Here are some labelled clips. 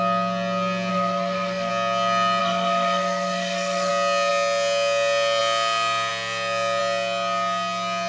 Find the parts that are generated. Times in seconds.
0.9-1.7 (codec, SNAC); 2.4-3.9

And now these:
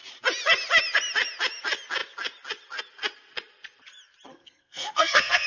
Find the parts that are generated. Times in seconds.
4.3-5.5 (codec, SNAC)

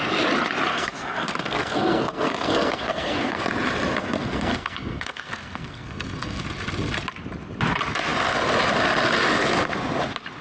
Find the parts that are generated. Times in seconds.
0.7-3.4 (codec, SNAC); 4.0-6.4

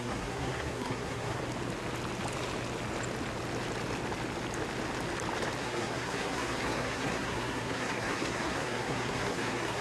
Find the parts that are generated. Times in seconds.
0.0-1.4 (codec, SNAC); 5.6-9.8

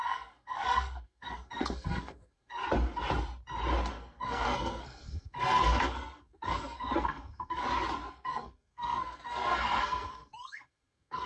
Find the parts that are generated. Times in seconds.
0.0-2.6 (codec, SNAC); 3.9-7.6; 8.1-11.3

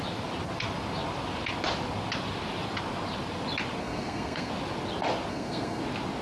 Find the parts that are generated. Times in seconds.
3.8-4.5 (codec, SNAC); 5.3-5.8

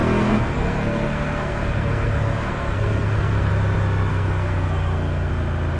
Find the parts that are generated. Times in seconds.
0.0-3.5 (codec, SNAC); 4.1-5.3

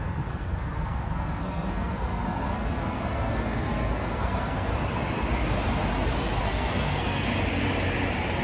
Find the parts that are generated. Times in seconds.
0.0-4.7 (codec, SNAC); 6.4-7.3